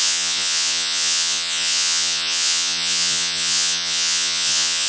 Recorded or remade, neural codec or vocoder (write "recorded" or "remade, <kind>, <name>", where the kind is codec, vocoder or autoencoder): remade, vocoder, Vocos